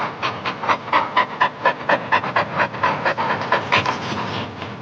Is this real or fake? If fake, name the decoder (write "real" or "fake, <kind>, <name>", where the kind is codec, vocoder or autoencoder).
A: real